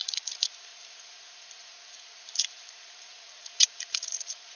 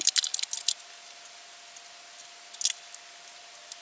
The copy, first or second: first